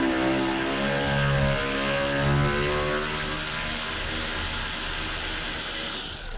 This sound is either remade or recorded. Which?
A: recorded